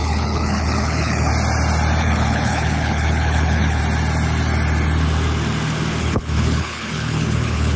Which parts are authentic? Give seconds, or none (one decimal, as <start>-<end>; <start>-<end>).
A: 1.3-2.0; 3.8-6.0